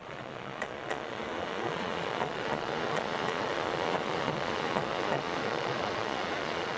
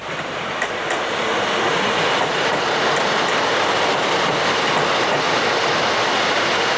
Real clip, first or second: second